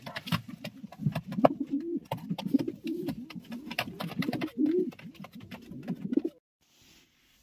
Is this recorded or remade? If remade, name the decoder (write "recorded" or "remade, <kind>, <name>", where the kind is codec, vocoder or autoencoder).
recorded